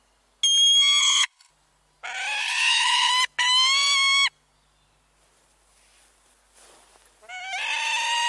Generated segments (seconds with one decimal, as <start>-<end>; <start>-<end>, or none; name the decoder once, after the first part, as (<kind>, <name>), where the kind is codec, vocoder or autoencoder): 1.0-1.5 (codec, HILCodec); 2.4-3.1